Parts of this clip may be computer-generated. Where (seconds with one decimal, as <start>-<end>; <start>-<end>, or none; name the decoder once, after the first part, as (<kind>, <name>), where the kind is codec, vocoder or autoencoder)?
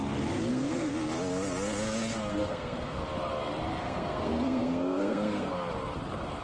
0.5-0.9 (codec, SNAC); 2.3-3.0; 3.8-5.5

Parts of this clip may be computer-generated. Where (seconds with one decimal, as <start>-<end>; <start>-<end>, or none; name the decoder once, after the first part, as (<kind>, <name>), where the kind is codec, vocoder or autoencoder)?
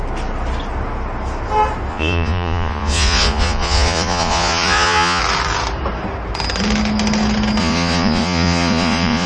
1.9-5.2 (vocoder, Vocos); 7.6-9.3